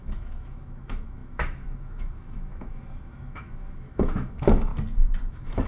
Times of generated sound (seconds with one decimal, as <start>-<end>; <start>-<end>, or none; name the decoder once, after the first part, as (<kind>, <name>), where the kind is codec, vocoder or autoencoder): 0.0-4.7 (autoencoder, DAC-VAE); 5.3-5.7